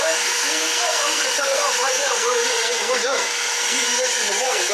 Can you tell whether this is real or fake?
fake